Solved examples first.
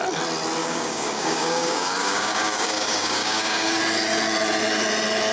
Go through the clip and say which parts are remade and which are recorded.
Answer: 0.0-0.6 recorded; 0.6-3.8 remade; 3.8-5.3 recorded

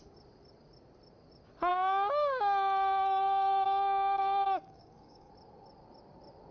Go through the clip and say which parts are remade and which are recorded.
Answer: 0.0-1.7 recorded; 1.7-5.3 remade; 5.3-6.5 recorded

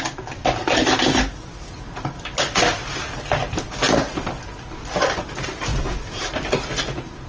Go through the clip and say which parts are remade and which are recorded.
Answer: 0.0-7.3 recorded